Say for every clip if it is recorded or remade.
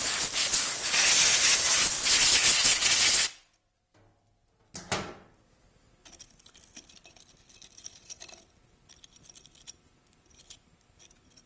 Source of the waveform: recorded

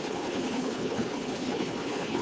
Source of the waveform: remade